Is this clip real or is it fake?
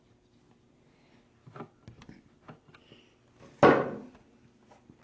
real